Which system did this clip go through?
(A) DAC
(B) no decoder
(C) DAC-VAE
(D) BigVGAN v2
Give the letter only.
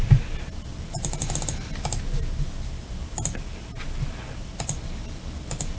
B